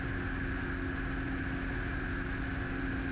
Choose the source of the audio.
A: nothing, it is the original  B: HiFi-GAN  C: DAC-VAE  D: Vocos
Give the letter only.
A